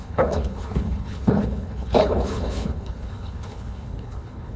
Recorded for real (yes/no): no